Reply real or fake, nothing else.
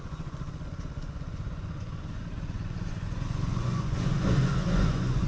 fake